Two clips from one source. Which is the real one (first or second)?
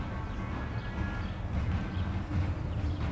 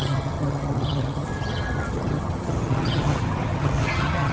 first